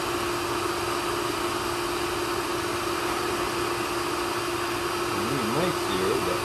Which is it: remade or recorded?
recorded